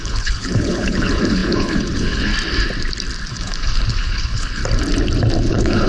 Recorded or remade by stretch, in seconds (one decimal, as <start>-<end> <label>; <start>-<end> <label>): 0.0-2.3 remade; 2.3-3.3 recorded; 3.3-4.6 remade; 4.6-5.5 recorded; 5.5-5.9 remade